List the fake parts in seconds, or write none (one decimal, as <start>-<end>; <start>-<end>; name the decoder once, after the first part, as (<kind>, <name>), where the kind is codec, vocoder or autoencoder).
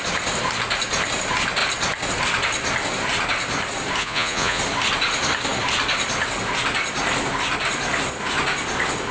4.0-4.6 (vocoder, Vocos)